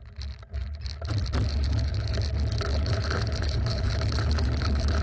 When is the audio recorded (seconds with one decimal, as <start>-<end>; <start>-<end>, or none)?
0.0-1.5; 2.2-2.7